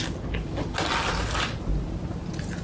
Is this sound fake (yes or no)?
no